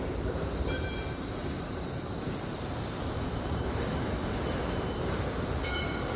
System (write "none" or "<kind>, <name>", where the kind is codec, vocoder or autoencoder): vocoder, BigVGAN v2